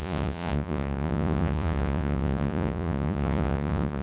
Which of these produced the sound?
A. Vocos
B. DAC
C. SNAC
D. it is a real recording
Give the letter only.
A